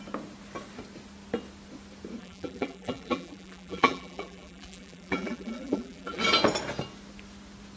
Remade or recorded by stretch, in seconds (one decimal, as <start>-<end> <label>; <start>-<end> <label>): 0.0-2.2 recorded; 2.2-6.2 remade; 6.2-7.8 recorded